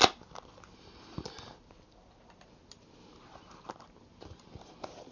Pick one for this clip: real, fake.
real